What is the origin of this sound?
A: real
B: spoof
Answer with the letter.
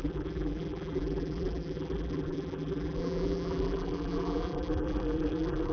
B